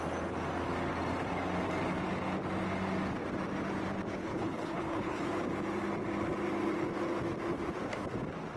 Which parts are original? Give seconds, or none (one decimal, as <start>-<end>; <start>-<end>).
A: 0.0-4.2; 5.3-8.6